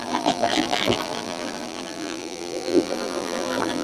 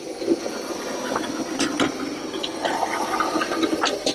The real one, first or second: second